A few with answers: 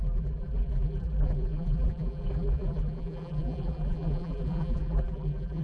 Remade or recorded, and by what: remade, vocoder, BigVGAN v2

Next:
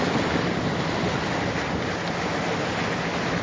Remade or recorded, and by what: recorded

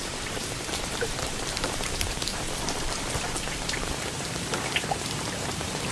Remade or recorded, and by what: remade, vocoder, BigVGAN v2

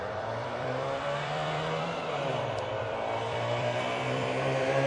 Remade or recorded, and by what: remade, vocoder, BigVGAN v2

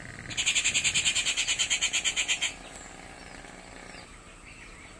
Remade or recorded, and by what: recorded